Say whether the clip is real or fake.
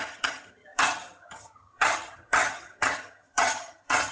fake